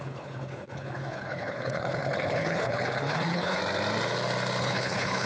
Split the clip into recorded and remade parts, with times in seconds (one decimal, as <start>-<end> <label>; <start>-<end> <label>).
0.0-3.6 remade; 3.6-4.6 recorded; 4.6-5.3 remade